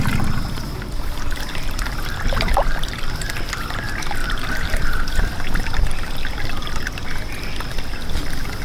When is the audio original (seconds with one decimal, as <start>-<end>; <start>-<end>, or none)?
0.0-4.2; 4.8-8.6